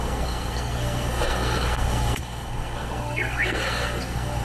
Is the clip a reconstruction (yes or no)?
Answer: yes